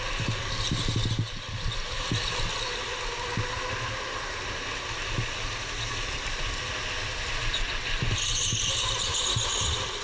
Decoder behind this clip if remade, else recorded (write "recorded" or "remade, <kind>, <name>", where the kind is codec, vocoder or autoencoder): recorded